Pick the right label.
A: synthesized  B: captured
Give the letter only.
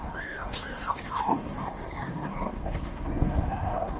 A